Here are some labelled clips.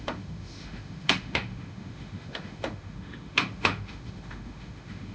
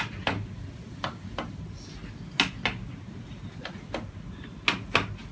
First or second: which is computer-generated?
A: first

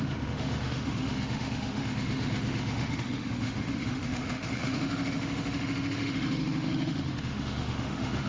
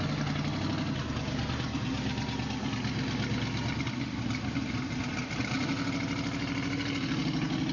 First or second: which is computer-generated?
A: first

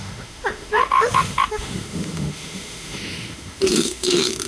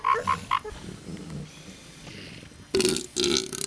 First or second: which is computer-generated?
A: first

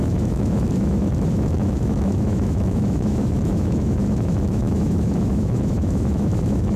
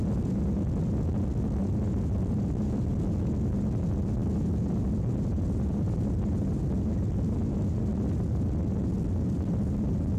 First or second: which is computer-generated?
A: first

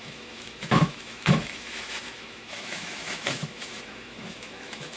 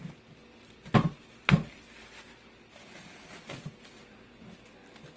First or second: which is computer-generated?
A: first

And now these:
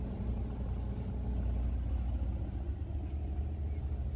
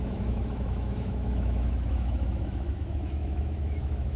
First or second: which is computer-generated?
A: second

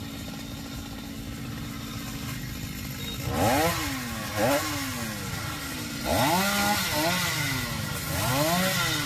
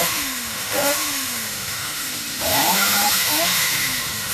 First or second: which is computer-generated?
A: second